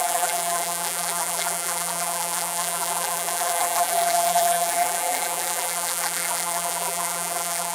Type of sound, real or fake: fake